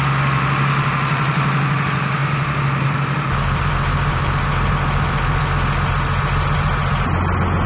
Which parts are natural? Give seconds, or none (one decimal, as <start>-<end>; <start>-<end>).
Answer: 0.0-2.2; 4.7-7.7